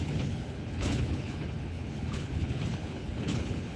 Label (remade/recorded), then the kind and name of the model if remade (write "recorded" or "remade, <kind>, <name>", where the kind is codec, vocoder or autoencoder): remade, codec, HILCodec